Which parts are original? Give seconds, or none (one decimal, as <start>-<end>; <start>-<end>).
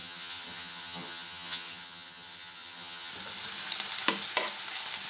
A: 3.1-5.1